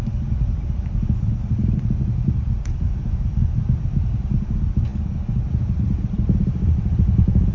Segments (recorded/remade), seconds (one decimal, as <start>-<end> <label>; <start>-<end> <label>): 0.0-3.3 remade; 3.3-3.9 recorded; 3.9-4.9 remade; 4.9-5.5 recorded; 5.5-7.5 remade